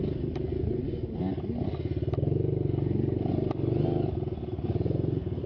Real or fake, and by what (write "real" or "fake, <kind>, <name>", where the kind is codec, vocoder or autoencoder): real